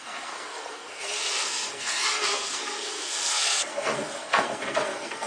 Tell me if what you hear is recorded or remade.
remade